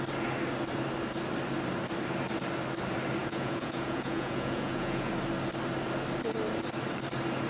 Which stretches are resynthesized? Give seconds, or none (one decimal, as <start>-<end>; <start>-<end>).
3.2-5.1